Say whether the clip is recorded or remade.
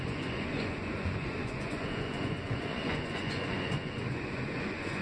remade